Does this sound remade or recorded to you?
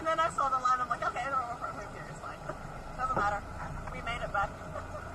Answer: recorded